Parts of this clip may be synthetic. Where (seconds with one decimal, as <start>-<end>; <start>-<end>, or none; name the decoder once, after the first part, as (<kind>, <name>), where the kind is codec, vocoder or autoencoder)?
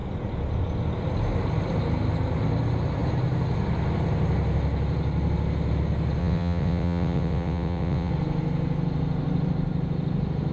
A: 6.2-8.1 (vocoder, WaveNeXt)